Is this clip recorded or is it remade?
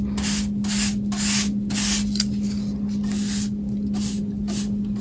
recorded